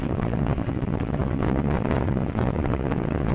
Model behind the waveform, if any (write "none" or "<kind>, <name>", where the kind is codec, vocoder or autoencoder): vocoder, WaveNeXt